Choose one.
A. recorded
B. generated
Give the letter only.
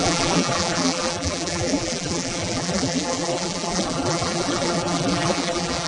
B